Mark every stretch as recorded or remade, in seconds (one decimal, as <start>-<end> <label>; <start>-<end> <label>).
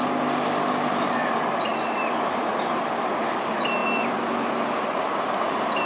0.0-1.7 recorded; 1.7-2.8 remade; 2.8-5.9 recorded